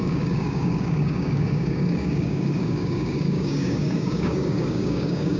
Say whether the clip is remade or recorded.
remade